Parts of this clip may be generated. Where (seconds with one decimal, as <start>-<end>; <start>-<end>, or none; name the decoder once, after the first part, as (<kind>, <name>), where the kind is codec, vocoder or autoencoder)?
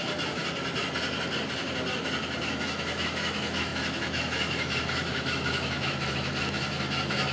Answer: 0.0-0.4 (autoencoder, DAC-VAE); 2.4-7.3